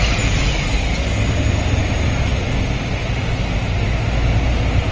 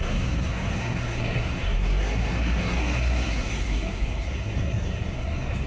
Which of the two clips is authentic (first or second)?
first